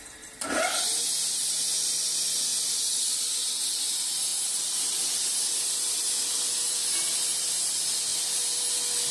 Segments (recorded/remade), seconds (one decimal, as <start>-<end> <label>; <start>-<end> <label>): 0.0-9.1 recorded